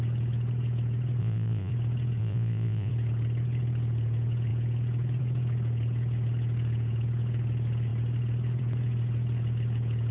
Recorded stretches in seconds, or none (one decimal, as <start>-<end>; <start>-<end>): 0.0-1.2; 1.7-2.2; 2.9-10.1